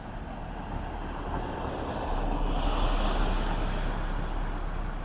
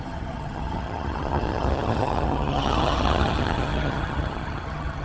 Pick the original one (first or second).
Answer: first